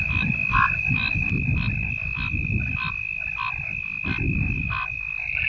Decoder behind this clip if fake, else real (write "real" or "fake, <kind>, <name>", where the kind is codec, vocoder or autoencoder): real